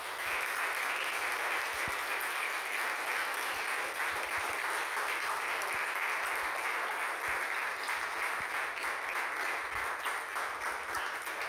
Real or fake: real